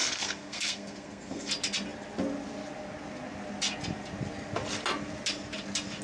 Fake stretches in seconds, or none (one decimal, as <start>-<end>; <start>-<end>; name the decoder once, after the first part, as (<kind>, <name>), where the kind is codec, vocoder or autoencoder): 0.0-1.5 (codec, SNAC)